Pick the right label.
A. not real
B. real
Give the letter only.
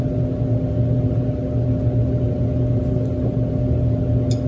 B